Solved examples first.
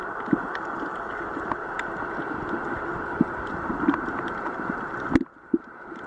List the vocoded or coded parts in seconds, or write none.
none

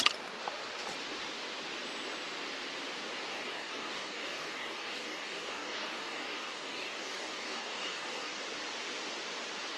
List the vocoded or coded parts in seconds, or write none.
3.3-8.4 (codec, DAC)

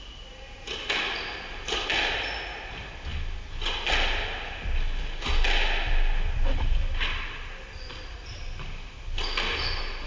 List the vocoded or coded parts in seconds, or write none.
none

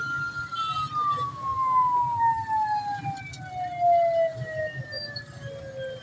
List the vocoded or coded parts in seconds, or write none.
none